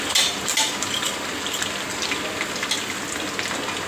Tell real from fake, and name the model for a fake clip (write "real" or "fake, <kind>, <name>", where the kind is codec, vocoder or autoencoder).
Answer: real